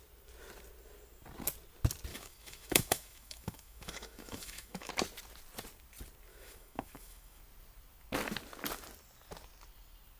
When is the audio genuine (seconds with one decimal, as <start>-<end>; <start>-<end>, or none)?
0.0-2.1; 4.9-6.3; 7.4-10.2